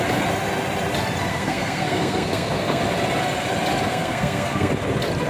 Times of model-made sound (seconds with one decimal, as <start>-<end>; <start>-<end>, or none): 1.3-2.8; 3.9-4.7